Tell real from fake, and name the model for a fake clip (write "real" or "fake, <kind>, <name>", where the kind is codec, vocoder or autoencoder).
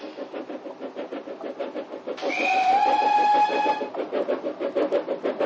real